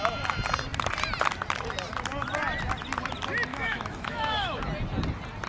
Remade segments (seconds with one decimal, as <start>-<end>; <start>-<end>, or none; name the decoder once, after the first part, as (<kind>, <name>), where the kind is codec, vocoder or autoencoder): 3.5-4.6 (autoencoder, DAC-VAE)